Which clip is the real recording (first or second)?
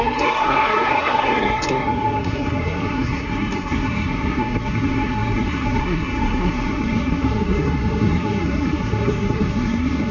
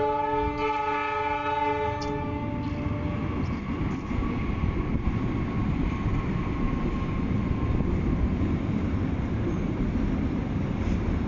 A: second